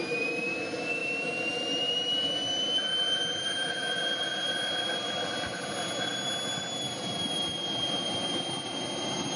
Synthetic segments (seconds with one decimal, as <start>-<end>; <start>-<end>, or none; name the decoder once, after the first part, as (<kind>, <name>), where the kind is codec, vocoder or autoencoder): none